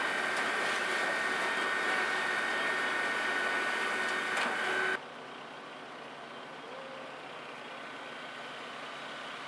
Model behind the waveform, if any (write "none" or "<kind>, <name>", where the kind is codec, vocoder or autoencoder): none